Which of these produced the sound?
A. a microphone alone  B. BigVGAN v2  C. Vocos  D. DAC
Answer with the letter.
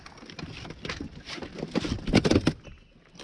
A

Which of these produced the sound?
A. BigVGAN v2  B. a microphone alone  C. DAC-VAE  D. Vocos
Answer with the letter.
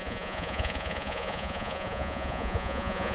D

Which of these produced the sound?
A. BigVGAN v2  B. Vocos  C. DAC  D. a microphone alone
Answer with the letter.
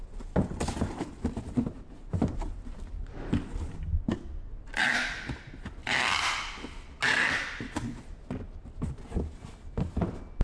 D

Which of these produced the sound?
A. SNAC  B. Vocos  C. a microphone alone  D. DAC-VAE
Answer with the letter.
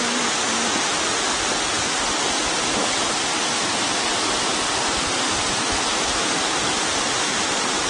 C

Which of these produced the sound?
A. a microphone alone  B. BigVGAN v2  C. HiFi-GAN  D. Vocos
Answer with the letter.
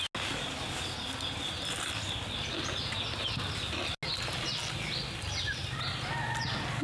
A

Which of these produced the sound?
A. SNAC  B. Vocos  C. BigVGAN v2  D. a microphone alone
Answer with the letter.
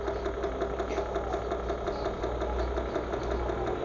D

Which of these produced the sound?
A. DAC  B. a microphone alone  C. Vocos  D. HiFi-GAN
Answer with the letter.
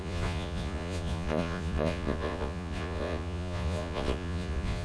C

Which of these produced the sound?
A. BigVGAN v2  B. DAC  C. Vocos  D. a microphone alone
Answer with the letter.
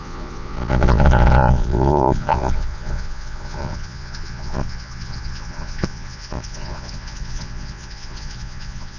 C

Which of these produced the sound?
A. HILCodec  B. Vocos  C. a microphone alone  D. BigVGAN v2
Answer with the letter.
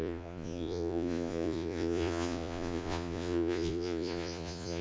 B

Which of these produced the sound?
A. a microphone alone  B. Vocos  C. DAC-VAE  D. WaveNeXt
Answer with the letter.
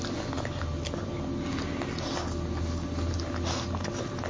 A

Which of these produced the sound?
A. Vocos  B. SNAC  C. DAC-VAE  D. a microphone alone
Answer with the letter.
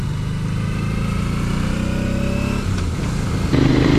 D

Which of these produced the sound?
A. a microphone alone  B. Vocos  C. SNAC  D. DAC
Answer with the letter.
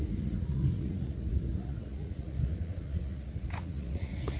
B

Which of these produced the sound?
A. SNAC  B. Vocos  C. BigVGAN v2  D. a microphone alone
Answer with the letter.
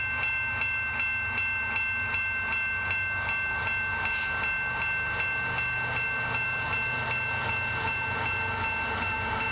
D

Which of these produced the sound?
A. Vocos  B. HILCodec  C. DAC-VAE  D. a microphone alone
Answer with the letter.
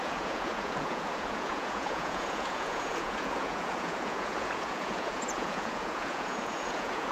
A